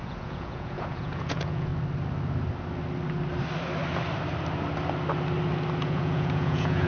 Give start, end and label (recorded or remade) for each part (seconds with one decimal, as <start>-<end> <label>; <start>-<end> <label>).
0.0-1.7 remade; 1.7-5.8 recorded; 5.8-6.9 remade